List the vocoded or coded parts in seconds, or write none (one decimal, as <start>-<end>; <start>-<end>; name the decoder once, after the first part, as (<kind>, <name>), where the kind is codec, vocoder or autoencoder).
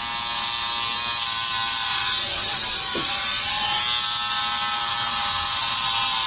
1.9-3.8 (vocoder, Vocos)